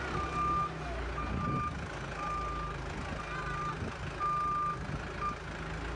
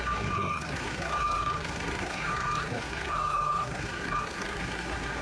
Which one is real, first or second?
first